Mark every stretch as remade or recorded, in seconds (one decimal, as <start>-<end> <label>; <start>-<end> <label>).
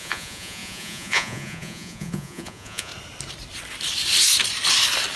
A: 0.0-2.9 remade; 2.9-5.2 recorded